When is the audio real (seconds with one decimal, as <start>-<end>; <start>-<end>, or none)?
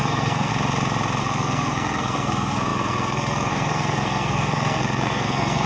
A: 0.5-1.2